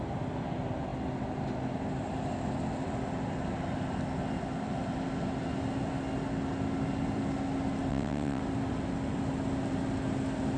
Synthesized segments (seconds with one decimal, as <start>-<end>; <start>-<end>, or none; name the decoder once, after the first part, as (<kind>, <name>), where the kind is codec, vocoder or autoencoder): 7.9-8.4 (vocoder, WaveNeXt)